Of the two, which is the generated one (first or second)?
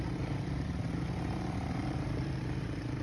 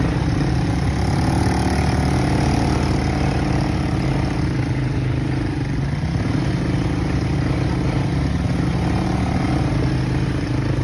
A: first